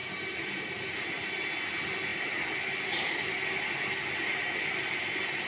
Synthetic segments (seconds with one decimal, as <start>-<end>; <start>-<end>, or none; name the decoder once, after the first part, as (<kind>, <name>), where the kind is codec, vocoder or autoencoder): 0.0-1.3 (vocoder, BigVGAN v2)